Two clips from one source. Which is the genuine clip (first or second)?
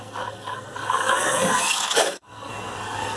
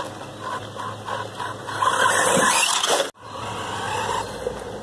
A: second